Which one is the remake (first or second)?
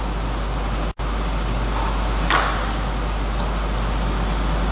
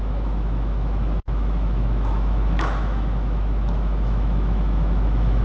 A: second